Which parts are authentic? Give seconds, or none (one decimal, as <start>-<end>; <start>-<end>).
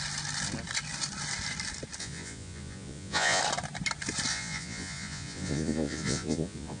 0.0-2.0; 3.4-4.3